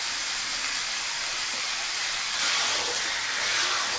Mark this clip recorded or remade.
recorded